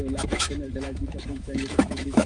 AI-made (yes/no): yes